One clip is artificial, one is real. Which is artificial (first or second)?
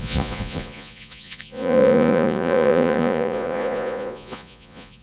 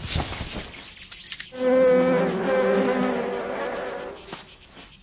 first